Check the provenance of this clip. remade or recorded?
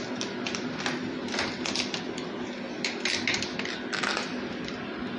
recorded